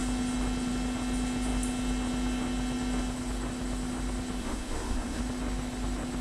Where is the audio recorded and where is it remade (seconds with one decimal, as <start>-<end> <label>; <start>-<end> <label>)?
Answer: 0.0-4.4 recorded; 4.4-5.2 remade; 5.2-6.2 recorded